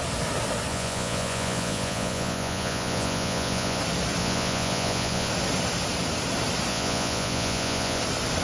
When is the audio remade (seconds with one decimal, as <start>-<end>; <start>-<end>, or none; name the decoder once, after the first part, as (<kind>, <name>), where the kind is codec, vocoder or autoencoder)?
0.7-3.8 (vocoder, Vocos); 4.2-5.3; 6.7-8.0